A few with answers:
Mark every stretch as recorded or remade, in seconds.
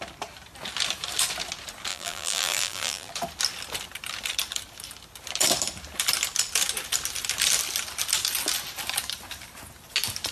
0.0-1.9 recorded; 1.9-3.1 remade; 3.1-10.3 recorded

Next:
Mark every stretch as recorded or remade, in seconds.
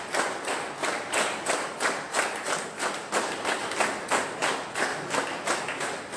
0.0-6.2 recorded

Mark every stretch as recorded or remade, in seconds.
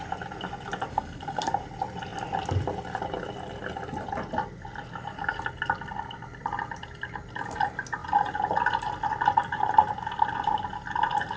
0.0-0.9 recorded; 0.9-1.5 remade; 1.5-11.4 recorded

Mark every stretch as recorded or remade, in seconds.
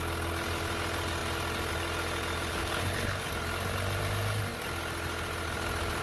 0.0-2.5 recorded; 2.5-3.3 remade; 3.3-6.0 recorded